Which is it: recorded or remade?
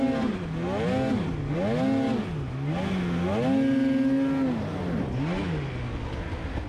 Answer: recorded